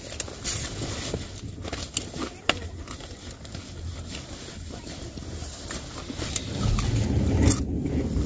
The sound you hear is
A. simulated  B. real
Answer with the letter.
B